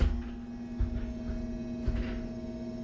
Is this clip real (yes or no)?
yes